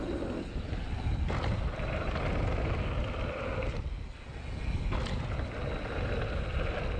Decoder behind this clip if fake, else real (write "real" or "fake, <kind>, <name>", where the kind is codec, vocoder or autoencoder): real